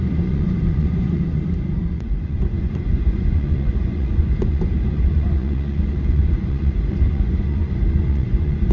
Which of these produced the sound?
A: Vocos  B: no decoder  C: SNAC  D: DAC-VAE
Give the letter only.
A